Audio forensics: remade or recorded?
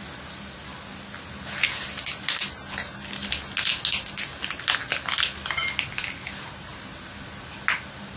recorded